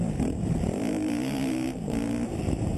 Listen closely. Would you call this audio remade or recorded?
remade